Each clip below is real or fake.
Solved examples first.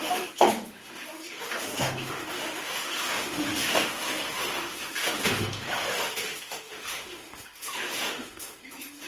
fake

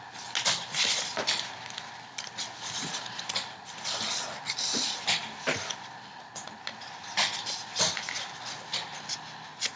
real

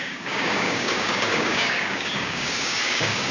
fake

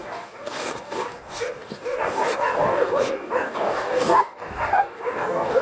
fake